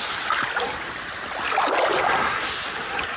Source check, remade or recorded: recorded